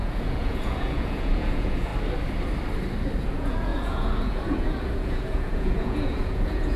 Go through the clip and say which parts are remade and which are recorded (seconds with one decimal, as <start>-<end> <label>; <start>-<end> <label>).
0.0-1.9 remade; 1.9-3.2 recorded; 3.2-6.8 remade